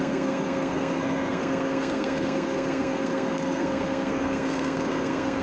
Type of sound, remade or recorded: remade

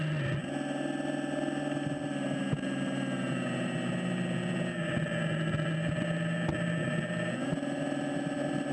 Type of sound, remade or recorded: recorded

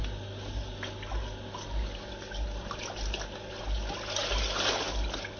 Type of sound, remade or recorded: recorded